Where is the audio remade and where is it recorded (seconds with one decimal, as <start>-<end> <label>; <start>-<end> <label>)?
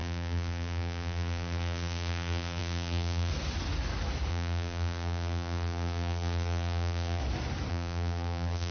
0.0-3.3 remade; 3.3-4.3 recorded; 4.3-7.2 remade; 7.2-7.7 recorded; 7.7-8.7 remade